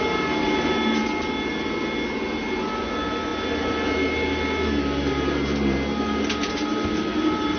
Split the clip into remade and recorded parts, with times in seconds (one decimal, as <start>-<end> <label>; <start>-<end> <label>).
0.0-7.6 recorded